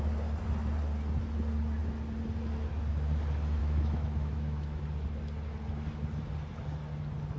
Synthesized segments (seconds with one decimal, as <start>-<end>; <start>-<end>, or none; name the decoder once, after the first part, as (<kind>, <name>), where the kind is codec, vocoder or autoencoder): 3.6-4.8 (autoencoder, DAC-VAE)